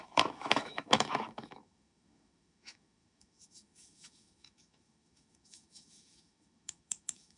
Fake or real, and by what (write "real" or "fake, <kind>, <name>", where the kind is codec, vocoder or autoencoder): fake, autoencoder, DAC-VAE